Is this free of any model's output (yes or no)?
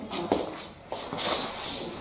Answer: yes